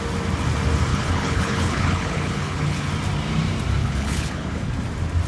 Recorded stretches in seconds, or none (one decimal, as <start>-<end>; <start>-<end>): 0.0-0.9; 2.9-3.8; 4.7-5.3